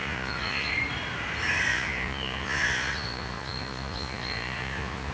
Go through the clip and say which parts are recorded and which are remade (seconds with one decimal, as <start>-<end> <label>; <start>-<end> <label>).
0.0-0.7 remade; 0.7-1.7 recorded; 1.7-5.1 remade